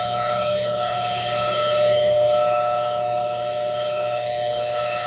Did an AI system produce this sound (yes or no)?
yes